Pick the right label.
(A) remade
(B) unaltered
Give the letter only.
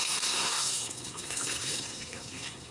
A